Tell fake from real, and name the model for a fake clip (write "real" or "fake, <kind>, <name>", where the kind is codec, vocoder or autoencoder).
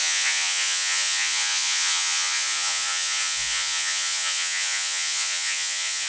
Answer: fake, vocoder, Vocos